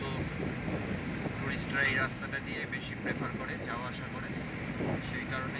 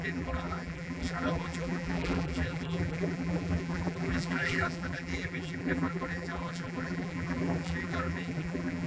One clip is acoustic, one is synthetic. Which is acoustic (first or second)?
first